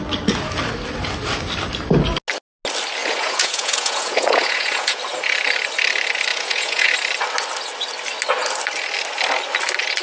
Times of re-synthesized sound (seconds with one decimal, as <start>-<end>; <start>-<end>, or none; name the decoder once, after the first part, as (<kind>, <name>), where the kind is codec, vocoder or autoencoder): 3.0-5.0 (vocoder, Vocos); 6.3-6.9